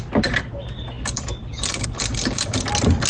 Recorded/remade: recorded